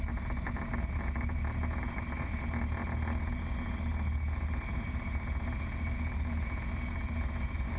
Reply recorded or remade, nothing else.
recorded